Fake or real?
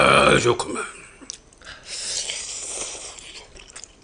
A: real